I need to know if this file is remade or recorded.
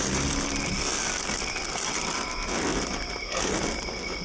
recorded